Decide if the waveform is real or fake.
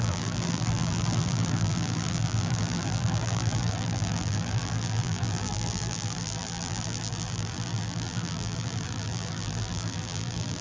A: fake